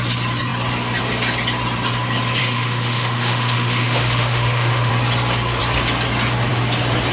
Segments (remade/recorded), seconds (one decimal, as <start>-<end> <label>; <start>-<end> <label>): 0.0-2.4 recorded; 2.4-4.9 remade; 4.9-7.1 recorded